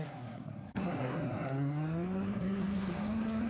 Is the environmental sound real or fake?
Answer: fake